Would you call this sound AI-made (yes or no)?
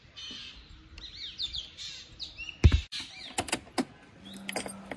no